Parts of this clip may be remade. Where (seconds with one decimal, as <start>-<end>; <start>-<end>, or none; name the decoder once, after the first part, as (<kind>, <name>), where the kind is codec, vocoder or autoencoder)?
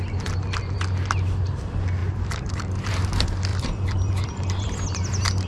2.0-2.9 (vocoder, BigVGAN v2); 3.5-4.7